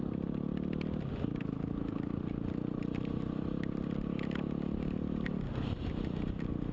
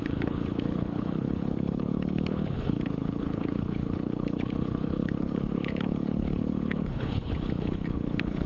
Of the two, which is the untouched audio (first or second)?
first